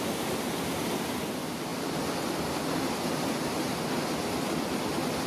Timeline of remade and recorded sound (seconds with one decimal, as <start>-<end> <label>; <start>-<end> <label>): 0.0-5.3 recorded